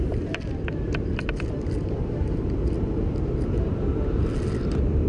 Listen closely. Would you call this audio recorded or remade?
recorded